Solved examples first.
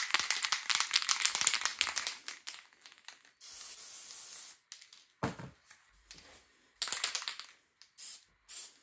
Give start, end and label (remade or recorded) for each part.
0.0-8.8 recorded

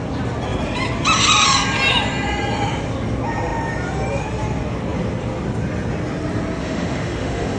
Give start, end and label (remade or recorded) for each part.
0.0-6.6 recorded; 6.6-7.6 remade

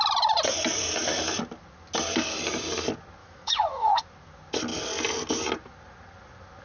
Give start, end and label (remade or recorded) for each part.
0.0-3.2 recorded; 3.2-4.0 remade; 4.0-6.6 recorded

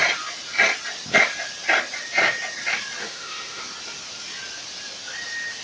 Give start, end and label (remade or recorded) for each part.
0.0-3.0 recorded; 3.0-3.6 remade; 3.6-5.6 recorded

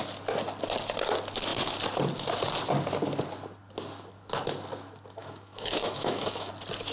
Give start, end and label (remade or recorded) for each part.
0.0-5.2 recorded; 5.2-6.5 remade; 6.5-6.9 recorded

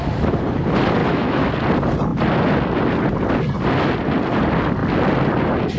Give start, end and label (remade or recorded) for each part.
0.0-1.0 recorded; 1.0-1.5 remade; 1.5-5.8 recorded

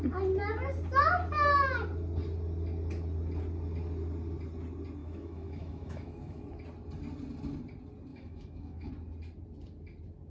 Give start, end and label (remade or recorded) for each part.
0.0-5.0 recorded; 5.0-6.4 remade; 6.4-8.1 recorded; 8.1-8.9 remade; 8.9-10.3 recorded